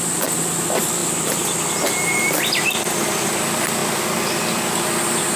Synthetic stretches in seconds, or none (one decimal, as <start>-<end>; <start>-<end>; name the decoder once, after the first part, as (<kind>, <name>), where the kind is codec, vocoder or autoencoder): 1.0-3.3 (vocoder, BigVGAN v2)